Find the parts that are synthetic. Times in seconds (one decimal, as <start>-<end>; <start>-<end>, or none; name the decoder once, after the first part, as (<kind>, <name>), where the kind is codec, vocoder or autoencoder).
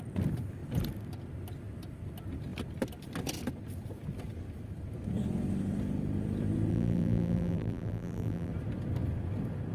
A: 6.7-8.5 (vocoder, BigVGAN v2)